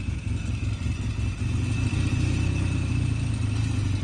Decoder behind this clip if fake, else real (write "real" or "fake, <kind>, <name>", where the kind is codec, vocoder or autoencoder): fake, vocoder, BigVGAN v2